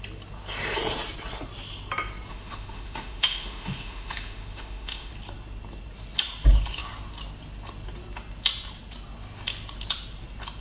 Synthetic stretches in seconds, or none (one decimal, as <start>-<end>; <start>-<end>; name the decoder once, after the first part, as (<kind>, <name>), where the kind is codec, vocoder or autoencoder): 2.3-5.1 (autoencoder, DAC-VAE)

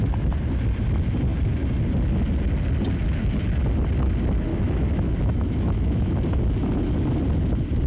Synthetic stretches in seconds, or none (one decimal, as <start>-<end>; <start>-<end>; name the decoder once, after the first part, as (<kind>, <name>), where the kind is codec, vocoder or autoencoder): 4.5-6.2 (autoencoder, DAC-VAE)

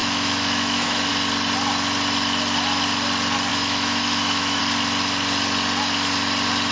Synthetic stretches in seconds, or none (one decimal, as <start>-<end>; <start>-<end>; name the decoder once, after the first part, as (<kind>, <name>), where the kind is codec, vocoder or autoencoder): 0.0-1.1 (autoencoder, DAC-VAE); 3.5-4.6

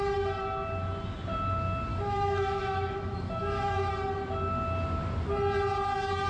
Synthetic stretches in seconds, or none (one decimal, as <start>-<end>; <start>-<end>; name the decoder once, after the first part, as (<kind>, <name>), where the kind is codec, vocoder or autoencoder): 1.9-3.9 (autoencoder, DAC-VAE)

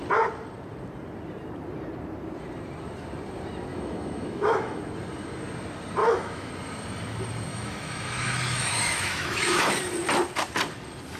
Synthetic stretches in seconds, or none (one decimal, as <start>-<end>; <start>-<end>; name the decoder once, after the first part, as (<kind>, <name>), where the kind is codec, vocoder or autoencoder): 3.7-4.8 (autoencoder, DAC-VAE); 6.0-6.5; 7.5-9.7

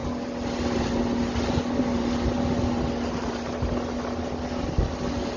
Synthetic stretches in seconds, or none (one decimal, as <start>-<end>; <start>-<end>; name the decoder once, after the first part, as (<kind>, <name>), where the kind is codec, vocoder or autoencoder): none

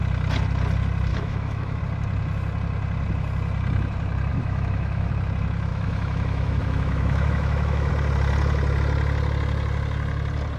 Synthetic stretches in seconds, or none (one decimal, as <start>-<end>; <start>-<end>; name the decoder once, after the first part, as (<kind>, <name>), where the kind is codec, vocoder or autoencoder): 1.1-1.8 (autoencoder, DAC-VAE); 4.3-5.1; 5.7-7.9

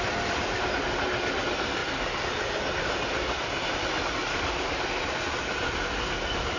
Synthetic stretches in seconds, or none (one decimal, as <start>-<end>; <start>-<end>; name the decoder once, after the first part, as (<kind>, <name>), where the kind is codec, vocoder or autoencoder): none